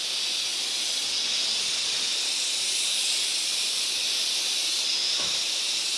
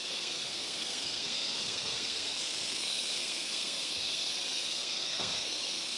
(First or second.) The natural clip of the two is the first